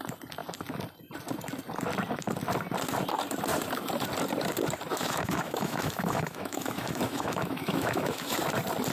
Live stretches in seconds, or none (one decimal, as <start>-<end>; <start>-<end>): 0.0-4.9; 8.4-8.9